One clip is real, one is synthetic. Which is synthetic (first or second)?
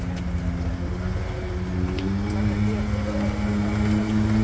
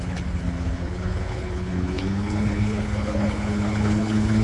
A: second